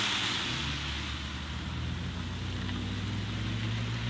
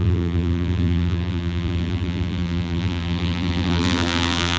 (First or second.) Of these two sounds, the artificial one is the second